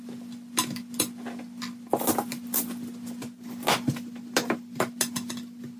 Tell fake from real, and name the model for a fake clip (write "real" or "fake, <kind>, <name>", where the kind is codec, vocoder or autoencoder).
real